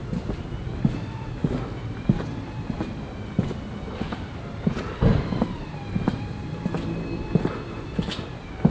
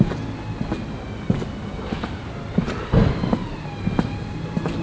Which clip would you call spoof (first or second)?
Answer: first